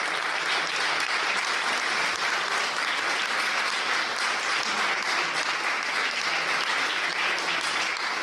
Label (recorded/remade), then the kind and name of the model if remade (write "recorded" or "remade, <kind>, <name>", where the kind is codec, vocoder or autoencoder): recorded